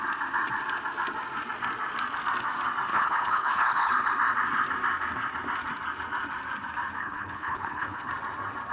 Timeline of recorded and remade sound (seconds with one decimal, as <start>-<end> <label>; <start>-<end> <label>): 0.0-2.9 recorded; 2.9-3.9 remade; 3.9-7.0 recorded; 7.0-8.1 remade; 8.1-8.7 recorded